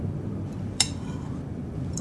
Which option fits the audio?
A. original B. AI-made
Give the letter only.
B